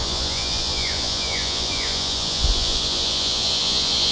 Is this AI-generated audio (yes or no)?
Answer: yes